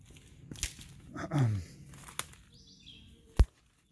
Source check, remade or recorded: recorded